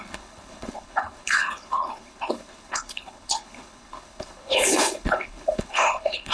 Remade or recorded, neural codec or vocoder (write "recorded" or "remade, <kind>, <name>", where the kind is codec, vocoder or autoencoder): remade, codec, HILCodec